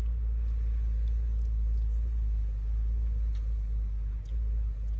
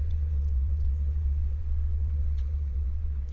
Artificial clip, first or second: second